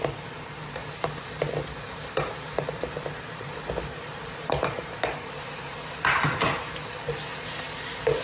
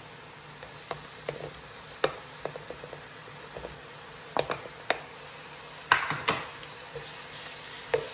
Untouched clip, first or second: second